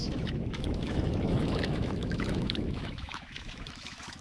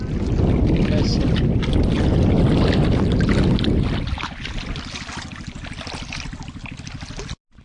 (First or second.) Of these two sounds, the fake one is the first